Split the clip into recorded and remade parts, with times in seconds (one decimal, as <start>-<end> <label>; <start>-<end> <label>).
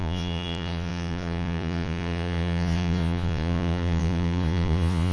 0.0-5.1 remade